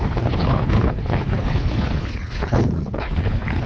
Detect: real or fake fake